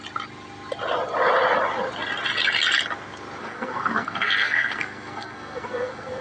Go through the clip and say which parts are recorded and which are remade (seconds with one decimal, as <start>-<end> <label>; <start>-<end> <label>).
0.0-3.4 recorded; 3.4-6.2 remade